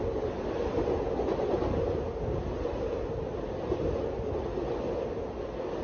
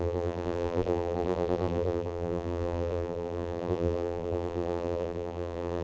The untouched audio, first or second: first